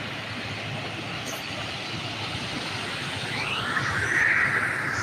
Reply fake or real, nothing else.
real